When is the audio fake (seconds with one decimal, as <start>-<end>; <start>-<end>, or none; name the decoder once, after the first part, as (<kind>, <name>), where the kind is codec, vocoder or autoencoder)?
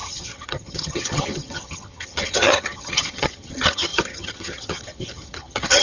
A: 0.0-5.8 (vocoder, HiFi-GAN)